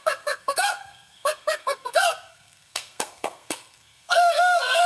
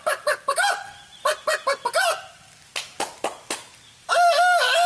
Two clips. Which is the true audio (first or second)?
second